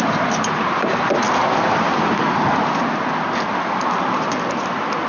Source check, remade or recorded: recorded